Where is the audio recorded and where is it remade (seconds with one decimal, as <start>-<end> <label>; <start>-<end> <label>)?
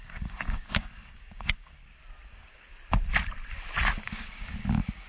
0.0-1.8 remade; 1.8-2.3 recorded; 2.3-2.7 remade; 2.7-3.8 recorded; 3.8-5.1 remade